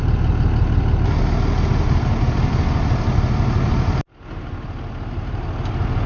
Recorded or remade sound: recorded